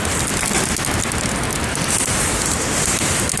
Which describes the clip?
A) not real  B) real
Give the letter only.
B